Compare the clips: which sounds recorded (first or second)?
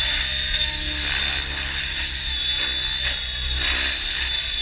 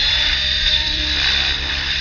first